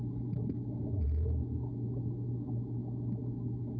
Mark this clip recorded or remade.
recorded